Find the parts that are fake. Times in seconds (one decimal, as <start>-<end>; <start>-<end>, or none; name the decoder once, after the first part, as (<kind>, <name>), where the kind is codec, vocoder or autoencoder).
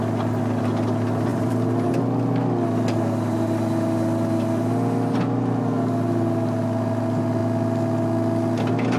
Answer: 1.3-2.0 (vocoder, BigVGAN v2)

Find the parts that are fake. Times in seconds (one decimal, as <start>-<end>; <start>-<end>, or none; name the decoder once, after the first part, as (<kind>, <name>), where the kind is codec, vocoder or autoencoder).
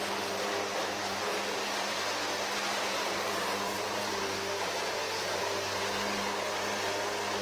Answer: 1.3-4.2 (vocoder, BigVGAN v2)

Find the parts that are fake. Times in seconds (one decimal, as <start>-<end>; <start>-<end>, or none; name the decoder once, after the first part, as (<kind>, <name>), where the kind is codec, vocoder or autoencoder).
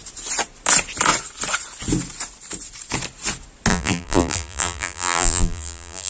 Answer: 3.7-6.1 (vocoder, BigVGAN v2)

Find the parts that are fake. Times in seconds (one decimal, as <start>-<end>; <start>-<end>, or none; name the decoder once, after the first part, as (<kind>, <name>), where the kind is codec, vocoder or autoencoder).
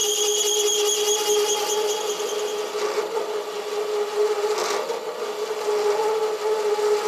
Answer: none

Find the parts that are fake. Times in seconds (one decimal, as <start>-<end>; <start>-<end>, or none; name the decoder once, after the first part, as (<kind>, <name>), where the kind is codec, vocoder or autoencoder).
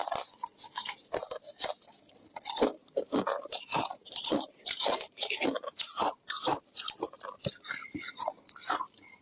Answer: 2.8-7.4 (vocoder, BigVGAN v2)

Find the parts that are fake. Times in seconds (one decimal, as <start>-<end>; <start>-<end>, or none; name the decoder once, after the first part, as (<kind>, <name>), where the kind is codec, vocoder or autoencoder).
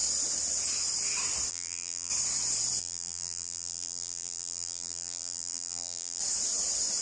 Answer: 1.5-2.1 (vocoder, BigVGAN v2); 2.8-6.2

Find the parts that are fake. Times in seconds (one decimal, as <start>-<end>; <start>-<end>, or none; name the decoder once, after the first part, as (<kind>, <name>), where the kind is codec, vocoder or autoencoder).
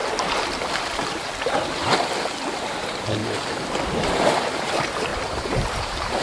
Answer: 1.1-1.8 (vocoder, BigVGAN v2); 2.6-3.2; 4.4-6.2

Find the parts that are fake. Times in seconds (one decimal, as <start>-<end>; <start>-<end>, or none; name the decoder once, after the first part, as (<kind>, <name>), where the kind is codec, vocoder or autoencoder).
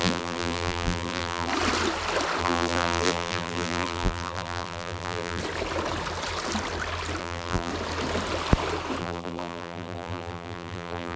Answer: 0.0-1.5 (vocoder, BigVGAN v2); 2.4-5.4; 7.2-7.7; 9.0-11.2